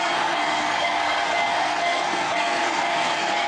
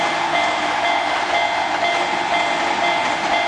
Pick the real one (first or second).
second